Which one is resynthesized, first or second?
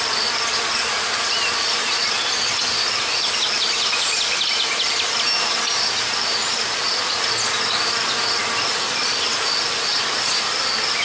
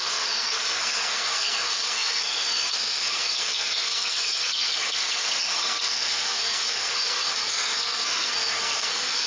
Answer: second